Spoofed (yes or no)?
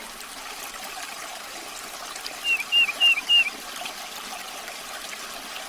no